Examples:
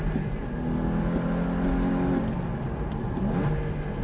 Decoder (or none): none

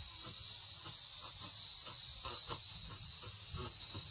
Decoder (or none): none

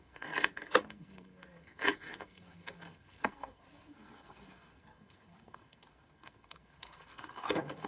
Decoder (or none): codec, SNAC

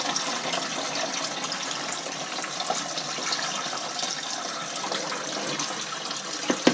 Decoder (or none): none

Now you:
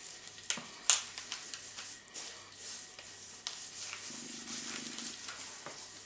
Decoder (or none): none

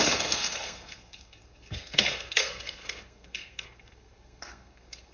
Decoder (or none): codec, SNAC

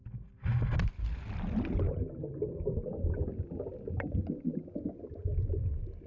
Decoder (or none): none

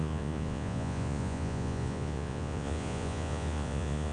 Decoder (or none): vocoder, Vocos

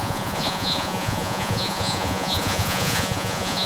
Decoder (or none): vocoder, Vocos